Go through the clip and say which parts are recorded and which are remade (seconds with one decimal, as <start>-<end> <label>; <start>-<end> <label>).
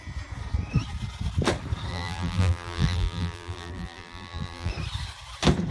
0.0-1.9 recorded; 1.9-4.7 remade; 4.7-5.7 recorded